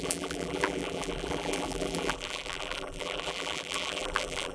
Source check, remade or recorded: remade